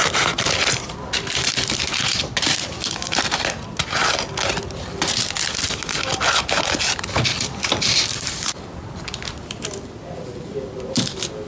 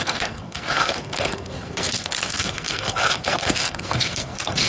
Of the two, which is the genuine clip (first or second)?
first